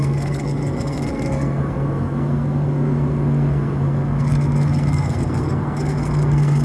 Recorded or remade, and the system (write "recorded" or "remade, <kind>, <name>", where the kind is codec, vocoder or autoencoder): remade, codec, SNAC